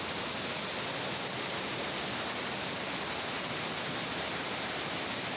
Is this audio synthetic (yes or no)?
no